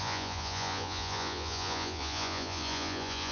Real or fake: fake